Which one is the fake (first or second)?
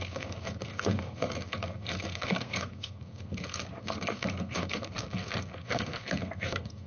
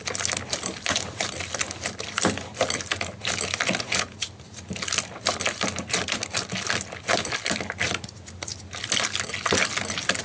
first